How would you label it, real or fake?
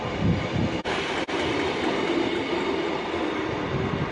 real